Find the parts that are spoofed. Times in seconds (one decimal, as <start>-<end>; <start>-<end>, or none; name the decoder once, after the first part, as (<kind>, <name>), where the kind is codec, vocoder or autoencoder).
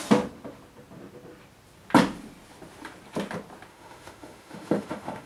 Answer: 3.7-5.3 (autoencoder, DAC-VAE)